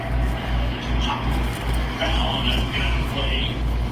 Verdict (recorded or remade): remade